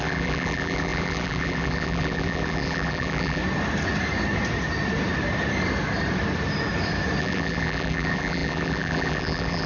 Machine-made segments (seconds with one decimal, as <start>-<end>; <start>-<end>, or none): 0.0-3.4; 7.2-9.7